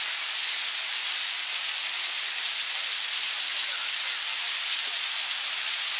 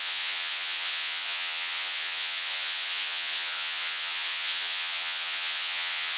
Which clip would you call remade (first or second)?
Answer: second